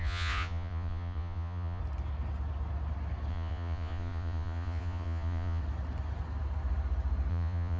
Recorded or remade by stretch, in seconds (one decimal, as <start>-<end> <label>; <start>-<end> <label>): 0.0-1.8 remade; 1.8-3.3 recorded; 3.3-5.6 remade; 5.6-7.3 recorded; 7.3-7.8 remade